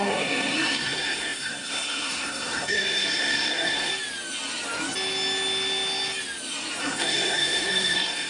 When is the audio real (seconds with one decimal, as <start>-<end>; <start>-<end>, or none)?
3.9-6.8